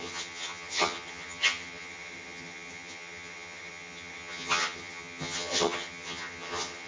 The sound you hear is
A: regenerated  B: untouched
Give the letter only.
A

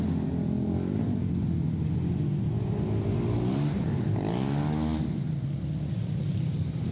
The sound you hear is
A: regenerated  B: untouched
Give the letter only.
B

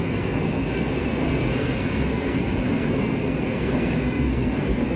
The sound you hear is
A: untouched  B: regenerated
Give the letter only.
B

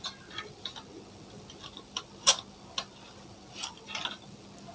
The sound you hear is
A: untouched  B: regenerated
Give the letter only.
A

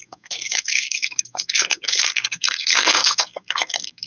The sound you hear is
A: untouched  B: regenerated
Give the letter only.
B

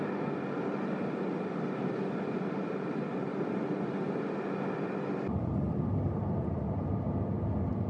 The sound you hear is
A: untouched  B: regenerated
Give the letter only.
A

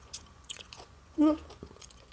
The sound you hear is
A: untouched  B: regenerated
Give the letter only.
B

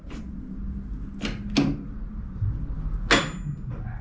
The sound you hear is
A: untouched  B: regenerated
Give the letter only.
A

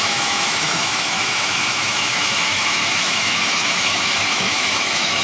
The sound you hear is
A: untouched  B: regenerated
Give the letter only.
B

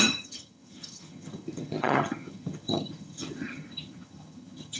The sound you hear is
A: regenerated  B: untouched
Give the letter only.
A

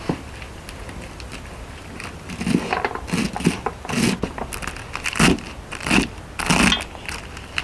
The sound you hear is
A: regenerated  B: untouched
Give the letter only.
B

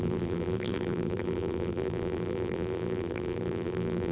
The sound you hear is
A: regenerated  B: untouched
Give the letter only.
A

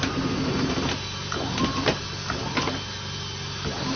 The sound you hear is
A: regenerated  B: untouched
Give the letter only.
B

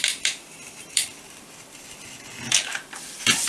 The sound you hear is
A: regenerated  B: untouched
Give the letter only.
A